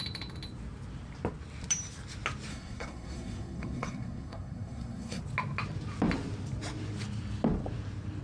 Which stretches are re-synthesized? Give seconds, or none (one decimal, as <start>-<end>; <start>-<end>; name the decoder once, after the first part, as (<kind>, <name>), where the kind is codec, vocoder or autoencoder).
2.5-5.2 (codec, SNAC)